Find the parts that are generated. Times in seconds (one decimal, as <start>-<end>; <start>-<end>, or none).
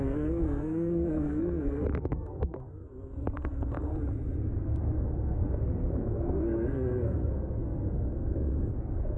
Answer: 0.0-3.9; 4.6-9.2